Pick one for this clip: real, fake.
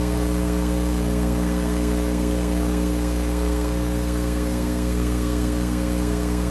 fake